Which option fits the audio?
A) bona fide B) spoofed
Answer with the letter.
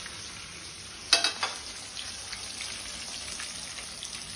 A